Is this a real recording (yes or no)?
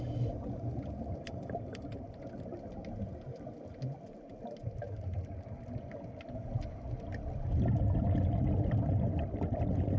yes